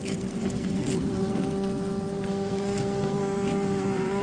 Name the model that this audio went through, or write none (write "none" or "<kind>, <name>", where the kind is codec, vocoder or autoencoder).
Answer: codec, SNAC